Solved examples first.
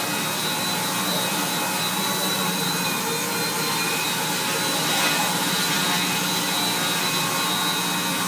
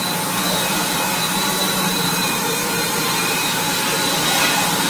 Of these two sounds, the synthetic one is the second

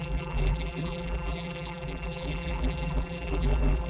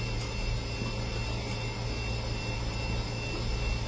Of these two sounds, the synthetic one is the first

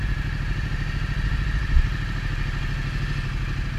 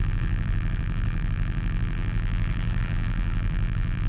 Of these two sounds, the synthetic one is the second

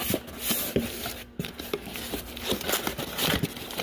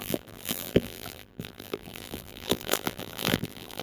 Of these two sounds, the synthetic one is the second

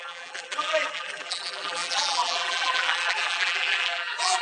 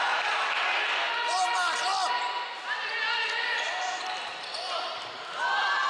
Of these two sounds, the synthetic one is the first